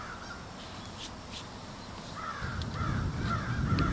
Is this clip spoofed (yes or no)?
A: no